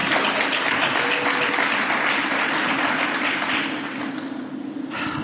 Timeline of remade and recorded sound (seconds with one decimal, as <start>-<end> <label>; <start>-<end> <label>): 0.0-5.2 recorded

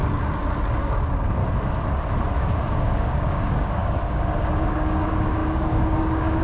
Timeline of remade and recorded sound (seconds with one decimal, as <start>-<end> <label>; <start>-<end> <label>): 0.0-0.8 recorded; 0.8-1.4 remade; 1.4-2.6 recorded; 2.6-6.4 remade

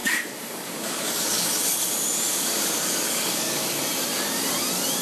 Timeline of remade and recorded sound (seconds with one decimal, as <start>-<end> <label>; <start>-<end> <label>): 0.0-1.5 remade; 1.5-2.3 recorded; 2.3-3.8 remade; 3.8-5.0 recorded